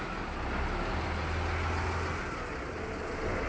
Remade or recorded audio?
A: recorded